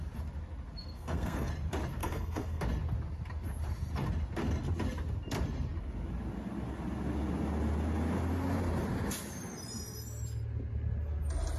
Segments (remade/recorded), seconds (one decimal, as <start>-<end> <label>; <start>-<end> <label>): 0.0-0.8 recorded; 0.8-1.5 remade; 1.5-2.0 recorded; 2.0-2.6 remade; 2.6-11.6 recorded